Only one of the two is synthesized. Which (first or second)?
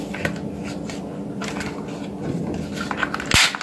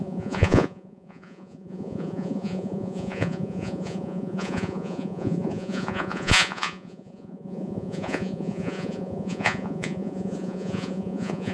second